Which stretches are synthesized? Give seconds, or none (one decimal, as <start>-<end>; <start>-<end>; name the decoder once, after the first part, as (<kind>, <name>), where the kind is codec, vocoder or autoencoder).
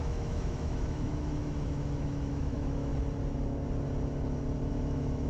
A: 0.0-2.9 (autoencoder, DAC-VAE); 4.7-5.3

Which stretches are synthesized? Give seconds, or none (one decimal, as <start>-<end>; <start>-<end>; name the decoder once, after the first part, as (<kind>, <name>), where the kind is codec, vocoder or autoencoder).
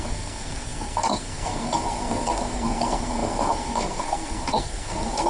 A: 0.0-5.3 (codec, SNAC)